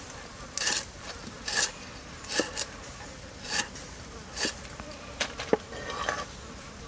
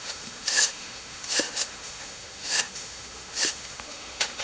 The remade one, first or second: second